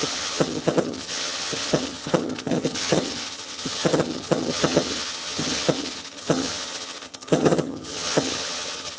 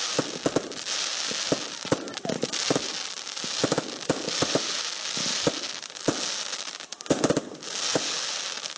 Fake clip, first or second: first